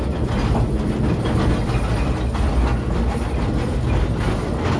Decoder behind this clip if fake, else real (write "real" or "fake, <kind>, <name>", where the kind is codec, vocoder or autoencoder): real